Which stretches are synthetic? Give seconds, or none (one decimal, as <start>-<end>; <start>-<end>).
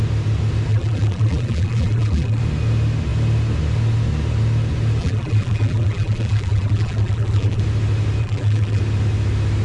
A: 0.7-2.4; 5.0-7.6; 8.2-8.8